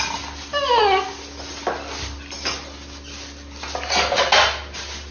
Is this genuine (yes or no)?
yes